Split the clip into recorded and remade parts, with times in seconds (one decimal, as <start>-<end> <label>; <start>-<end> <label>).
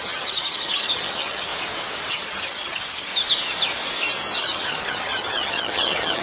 0.0-1.5 remade; 1.5-2.1 recorded; 2.1-3.1 remade; 3.1-4.4 recorded; 4.4-6.2 remade